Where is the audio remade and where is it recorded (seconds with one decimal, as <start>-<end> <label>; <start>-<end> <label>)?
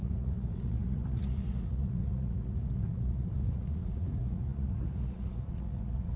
0.0-6.2 remade